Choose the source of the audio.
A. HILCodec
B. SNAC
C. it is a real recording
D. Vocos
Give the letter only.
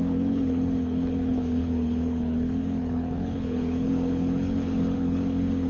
A